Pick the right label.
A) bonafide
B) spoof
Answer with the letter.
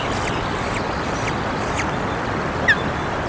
A